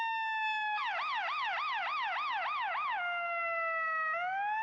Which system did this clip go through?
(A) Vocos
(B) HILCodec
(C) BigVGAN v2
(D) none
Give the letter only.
D